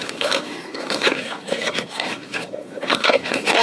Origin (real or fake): fake